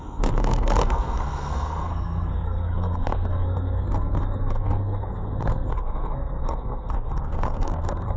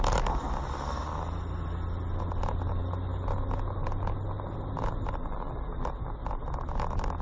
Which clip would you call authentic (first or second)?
second